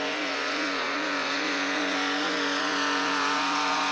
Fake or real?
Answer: fake